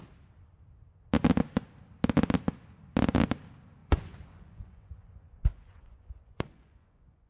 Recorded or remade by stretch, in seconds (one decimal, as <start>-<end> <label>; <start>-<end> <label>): 0.0-3.8 recorded; 3.8-7.3 remade

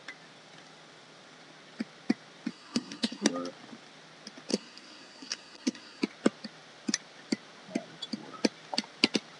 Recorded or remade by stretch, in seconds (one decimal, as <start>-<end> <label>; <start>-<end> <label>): 0.0-2.5 recorded; 2.5-3.3 remade; 3.3-4.5 recorded; 4.5-6.0 remade; 6.0-9.4 recorded